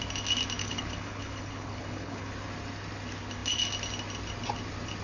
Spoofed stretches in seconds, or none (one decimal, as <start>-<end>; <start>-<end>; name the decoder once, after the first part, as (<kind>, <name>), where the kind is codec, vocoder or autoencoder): 0.6-2.3 (codec, HILCodec)